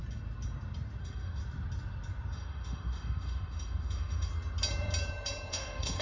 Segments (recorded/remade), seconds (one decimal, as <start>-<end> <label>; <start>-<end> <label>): 0.0-1.0 recorded; 1.0-1.4 remade; 1.4-2.3 recorded; 2.3-4.3 remade; 4.3-5.5 recorded; 5.5-6.0 remade